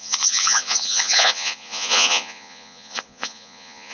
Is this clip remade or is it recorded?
remade